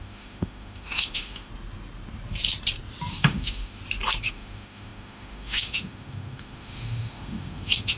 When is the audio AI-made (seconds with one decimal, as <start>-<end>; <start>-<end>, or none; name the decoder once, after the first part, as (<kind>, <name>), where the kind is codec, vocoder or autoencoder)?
0.0-1.5 (autoencoder, DAC-VAE); 3.1-3.8; 4.3-8.0

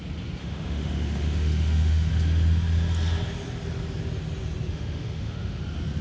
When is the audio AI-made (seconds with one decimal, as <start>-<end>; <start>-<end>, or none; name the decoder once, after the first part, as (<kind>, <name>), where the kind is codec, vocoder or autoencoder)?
0.4-2.1 (autoencoder, DAC-VAE); 4.7-5.6

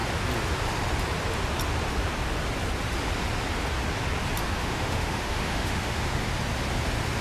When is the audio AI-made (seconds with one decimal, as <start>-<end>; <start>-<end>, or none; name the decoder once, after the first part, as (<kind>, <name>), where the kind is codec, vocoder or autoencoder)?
4.4-6.3 (autoencoder, DAC-VAE)

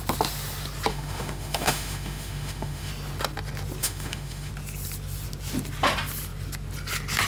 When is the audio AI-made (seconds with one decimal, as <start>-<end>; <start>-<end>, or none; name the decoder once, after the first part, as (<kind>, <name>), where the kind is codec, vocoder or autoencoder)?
0.9-2.9 (autoencoder, DAC-VAE); 3.8-4.5

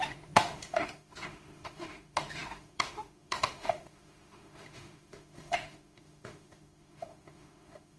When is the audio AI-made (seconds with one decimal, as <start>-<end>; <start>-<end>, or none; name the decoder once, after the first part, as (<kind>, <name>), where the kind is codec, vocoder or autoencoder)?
0.0-8.0 (autoencoder, DAC-VAE)

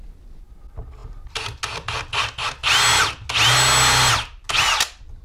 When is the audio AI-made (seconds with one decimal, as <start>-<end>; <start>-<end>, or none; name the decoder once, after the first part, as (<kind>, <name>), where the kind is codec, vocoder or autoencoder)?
none